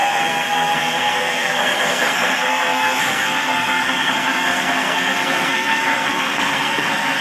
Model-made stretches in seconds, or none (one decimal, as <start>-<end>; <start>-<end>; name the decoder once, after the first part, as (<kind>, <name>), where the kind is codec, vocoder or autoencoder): 0.0-7.2 (codec, SNAC)